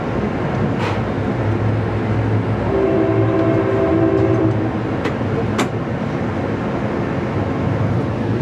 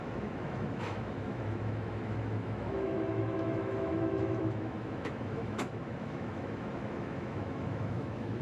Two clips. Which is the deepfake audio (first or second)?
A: second